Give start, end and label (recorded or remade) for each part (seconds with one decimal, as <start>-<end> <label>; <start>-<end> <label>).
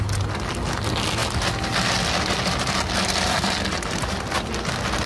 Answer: 0.0-5.1 recorded